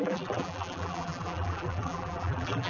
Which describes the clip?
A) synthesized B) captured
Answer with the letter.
A